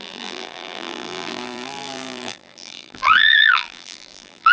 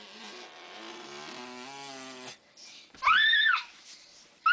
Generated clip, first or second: first